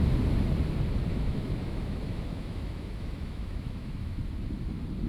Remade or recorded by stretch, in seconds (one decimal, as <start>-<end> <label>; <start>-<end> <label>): 0.0-1.1 recorded; 1.1-4.2 remade; 4.2-5.1 recorded